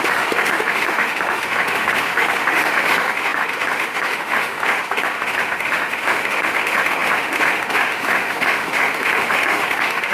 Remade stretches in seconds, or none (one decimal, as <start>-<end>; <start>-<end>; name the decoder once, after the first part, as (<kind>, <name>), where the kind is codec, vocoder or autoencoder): 0.0-10.1 (autoencoder, DAC-VAE)